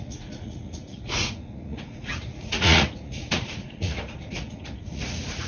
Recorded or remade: remade